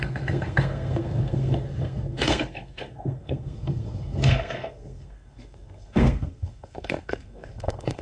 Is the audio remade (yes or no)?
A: yes